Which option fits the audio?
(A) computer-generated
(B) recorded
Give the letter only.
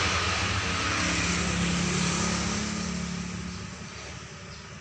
B